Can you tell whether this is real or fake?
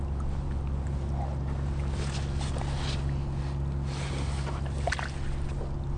real